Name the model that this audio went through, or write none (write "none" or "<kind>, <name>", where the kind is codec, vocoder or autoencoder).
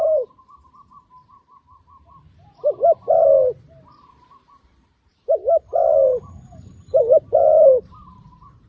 vocoder, BigVGAN v2